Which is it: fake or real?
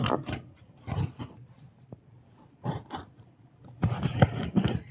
real